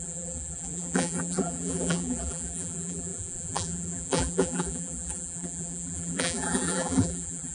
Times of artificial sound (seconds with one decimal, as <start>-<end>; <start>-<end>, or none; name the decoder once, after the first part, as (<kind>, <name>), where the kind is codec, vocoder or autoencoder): 0.0-7.5 (vocoder, BigVGAN v2)